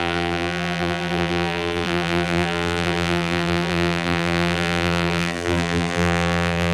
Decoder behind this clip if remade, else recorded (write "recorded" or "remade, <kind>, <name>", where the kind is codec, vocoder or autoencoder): remade, vocoder, BigVGAN v2